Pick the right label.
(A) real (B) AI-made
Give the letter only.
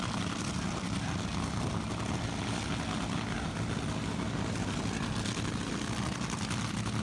A